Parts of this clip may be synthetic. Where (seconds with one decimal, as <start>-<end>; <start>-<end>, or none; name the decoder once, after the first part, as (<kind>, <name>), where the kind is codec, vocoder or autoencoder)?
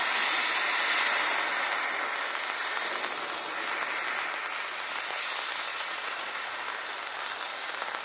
5.7-6.6 (vocoder, Vocos)